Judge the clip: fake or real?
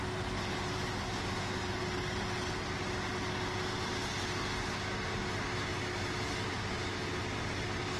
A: real